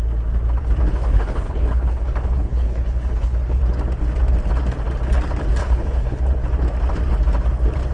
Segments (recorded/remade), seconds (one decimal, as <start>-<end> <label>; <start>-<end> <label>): 0.0-0.9 recorded; 0.9-3.6 remade; 3.6-5.6 recorded; 5.6-6.2 remade; 6.2-7.9 recorded